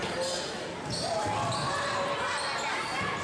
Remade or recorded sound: recorded